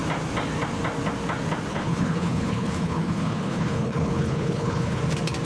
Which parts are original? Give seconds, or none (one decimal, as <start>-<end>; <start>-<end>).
0.0-1.7; 5.0-5.5